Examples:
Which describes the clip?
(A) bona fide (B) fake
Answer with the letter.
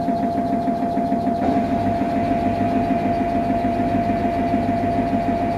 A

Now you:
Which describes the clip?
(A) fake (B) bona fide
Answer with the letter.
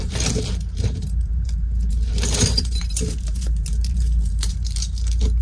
A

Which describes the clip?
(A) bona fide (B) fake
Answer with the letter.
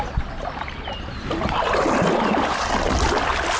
A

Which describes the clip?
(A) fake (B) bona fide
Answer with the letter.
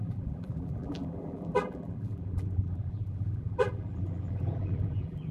A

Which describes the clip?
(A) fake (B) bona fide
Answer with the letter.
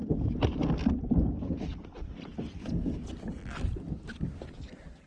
B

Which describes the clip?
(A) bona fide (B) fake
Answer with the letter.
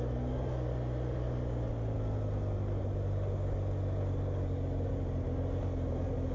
A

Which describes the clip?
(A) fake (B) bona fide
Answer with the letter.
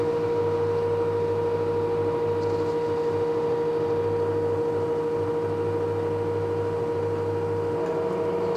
B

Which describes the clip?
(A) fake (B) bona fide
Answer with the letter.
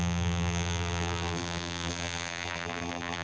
A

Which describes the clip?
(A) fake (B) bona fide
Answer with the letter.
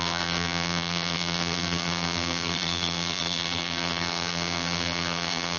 A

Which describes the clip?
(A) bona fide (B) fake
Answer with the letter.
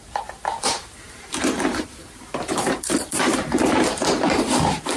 B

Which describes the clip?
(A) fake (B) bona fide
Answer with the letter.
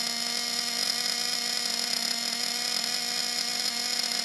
B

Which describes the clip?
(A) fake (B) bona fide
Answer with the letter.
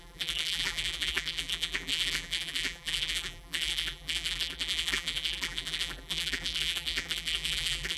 A